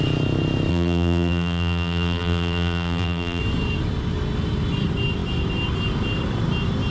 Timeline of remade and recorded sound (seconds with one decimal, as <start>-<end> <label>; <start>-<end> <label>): 0.0-0.7 recorded; 0.7-3.4 remade; 3.4-6.9 recorded